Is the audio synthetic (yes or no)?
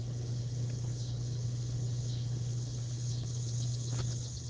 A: yes